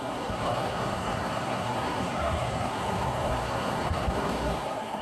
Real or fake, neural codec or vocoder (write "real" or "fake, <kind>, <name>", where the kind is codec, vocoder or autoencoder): fake, codec, SNAC